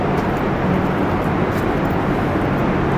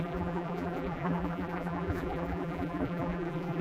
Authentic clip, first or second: first